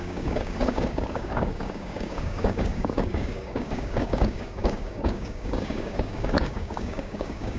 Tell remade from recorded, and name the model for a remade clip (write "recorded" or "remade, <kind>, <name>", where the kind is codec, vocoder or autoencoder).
remade, codec, DAC